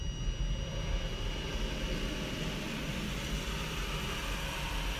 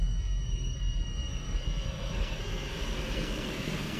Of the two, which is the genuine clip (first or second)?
first